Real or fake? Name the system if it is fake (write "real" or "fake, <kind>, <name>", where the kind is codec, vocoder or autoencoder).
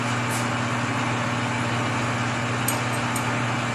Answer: real